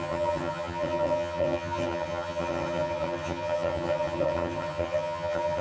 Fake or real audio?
fake